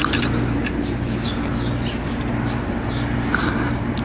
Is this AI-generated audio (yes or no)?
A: no